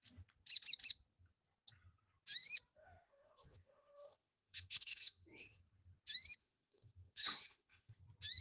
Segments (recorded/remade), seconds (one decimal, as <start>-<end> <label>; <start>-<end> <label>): 0.0-2.8 recorded; 2.8-5.6 remade; 5.6-6.4 recorded; 6.4-8.0 remade; 8.0-8.4 recorded